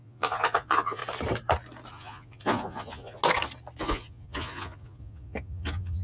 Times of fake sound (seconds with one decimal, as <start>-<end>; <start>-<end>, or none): 0.0-1.0; 1.9-3.2; 3.8-6.0